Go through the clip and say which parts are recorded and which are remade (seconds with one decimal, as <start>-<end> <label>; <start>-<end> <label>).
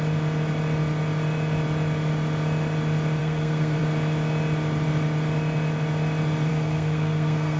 0.0-3.2 recorded; 3.2-3.8 remade; 3.8-6.5 recorded; 6.5-7.6 remade